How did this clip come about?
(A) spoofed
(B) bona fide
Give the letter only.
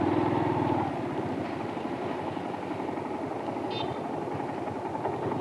B